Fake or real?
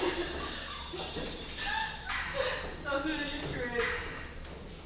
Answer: real